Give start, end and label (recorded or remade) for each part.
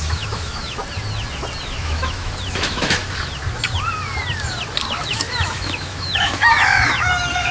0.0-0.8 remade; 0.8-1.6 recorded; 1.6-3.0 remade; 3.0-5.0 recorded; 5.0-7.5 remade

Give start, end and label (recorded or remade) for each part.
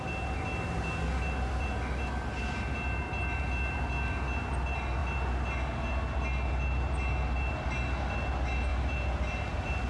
0.0-9.9 recorded